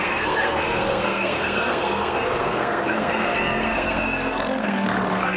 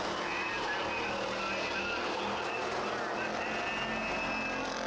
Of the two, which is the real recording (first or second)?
second